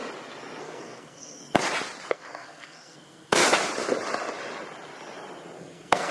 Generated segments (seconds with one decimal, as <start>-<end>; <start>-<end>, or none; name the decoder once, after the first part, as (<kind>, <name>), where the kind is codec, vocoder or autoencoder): 0.6-1.4 (codec, SNAC); 2.1-3.4; 5.6-6.1